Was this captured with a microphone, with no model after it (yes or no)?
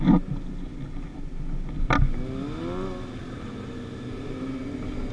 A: yes